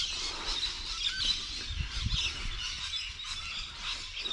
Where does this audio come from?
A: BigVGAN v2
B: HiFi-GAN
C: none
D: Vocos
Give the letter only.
C